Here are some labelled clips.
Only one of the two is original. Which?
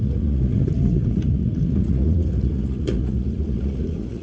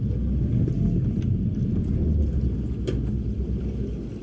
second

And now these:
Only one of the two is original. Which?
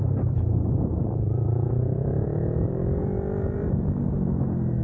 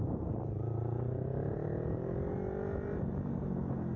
second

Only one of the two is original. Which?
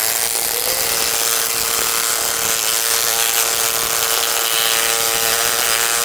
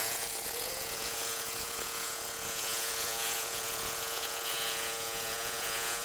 first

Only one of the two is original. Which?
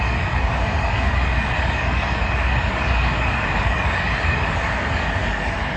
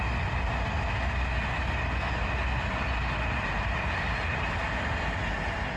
second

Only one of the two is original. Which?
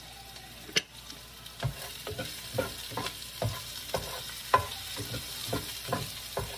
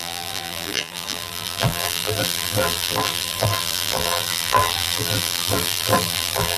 first